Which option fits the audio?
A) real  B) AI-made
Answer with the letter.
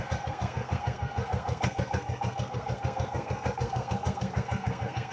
B